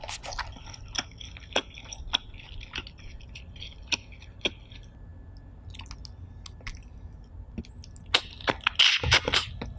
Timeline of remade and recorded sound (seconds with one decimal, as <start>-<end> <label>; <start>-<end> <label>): 0.0-9.8 recorded

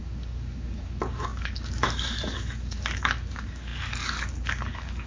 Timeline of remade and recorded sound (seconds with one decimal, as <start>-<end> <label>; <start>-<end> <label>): 0.0-5.1 remade